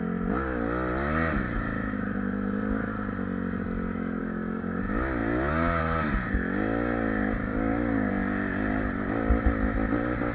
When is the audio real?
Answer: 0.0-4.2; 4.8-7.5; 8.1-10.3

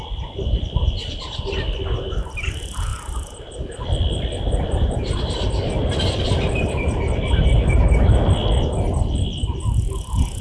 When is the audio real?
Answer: 0.0-10.4

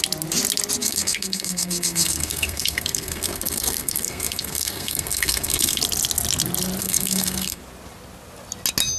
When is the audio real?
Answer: 0.0-0.8; 5.8-6.8; 7.6-9.0

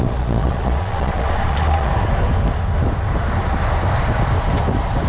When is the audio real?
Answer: 1.9-5.1

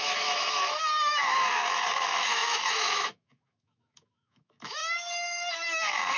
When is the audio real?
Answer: none

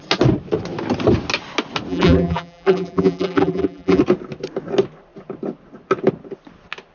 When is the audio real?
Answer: 0.0-1.9; 4.0-6.9